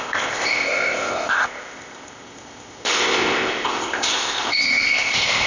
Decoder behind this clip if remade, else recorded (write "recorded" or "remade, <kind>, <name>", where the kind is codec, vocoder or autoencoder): remade, codec, ZipCodec